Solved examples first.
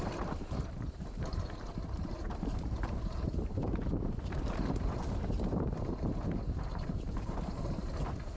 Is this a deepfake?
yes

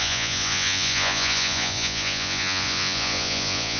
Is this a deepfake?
yes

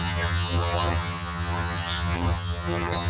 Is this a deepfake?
yes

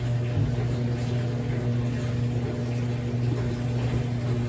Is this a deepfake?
no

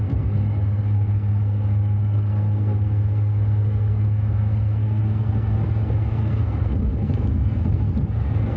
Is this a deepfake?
yes